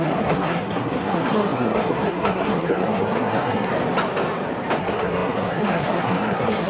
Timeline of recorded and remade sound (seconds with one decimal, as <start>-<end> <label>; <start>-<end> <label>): 0.0-3.7 remade; 3.7-4.8 recorded; 4.8-6.7 remade